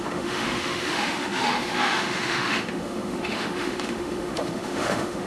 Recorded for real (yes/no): no